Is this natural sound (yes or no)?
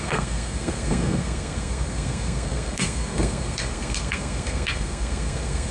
no